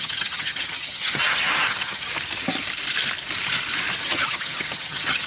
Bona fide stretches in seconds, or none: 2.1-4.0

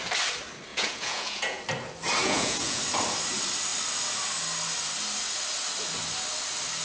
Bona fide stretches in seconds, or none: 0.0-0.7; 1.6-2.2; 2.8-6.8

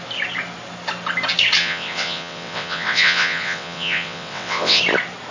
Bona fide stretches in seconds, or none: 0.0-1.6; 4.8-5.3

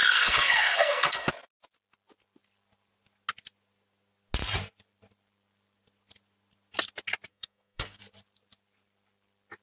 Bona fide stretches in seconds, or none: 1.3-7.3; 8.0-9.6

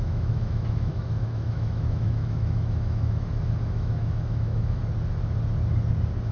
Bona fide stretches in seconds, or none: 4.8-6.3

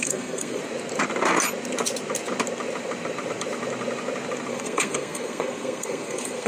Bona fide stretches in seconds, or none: 0.6-4.5

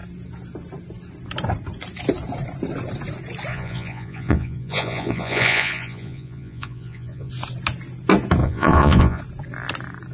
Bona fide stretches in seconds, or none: 0.0-3.5; 7.3-8.4; 9.2-10.1